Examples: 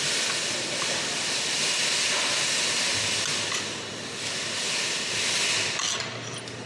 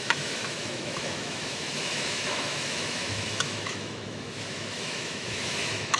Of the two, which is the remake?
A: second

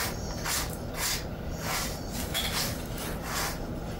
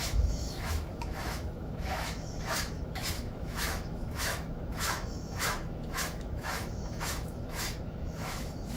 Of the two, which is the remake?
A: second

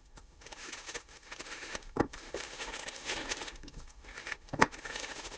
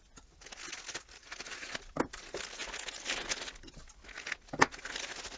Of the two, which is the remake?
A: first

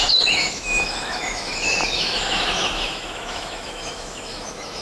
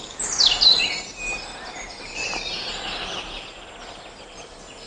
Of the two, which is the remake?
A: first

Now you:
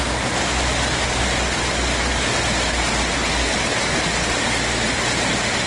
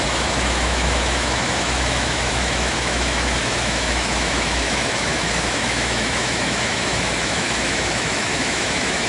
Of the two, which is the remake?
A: second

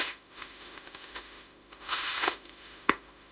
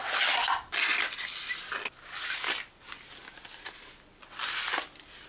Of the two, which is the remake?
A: first